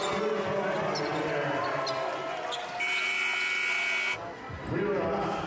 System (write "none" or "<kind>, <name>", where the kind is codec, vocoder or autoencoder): none